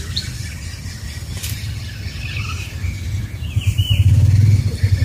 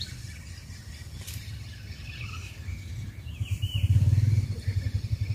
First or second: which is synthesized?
second